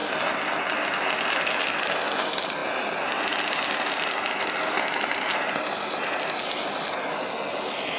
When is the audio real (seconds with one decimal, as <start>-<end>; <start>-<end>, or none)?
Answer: 0.0-8.0